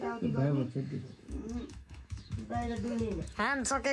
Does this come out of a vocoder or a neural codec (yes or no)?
yes